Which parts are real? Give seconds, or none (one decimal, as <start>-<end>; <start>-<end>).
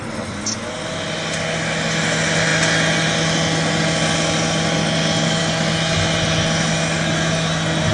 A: 0.0-7.9